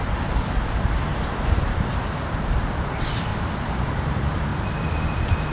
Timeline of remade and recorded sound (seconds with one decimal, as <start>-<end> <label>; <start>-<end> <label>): 0.0-3.3 remade; 3.3-3.9 recorded; 3.9-4.5 remade; 4.5-5.5 recorded